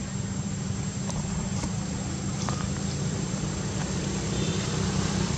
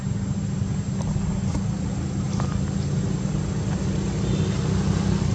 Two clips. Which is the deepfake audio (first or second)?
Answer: first